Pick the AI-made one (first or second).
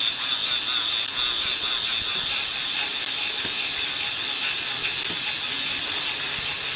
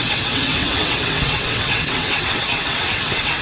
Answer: second